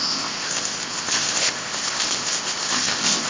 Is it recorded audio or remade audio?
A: remade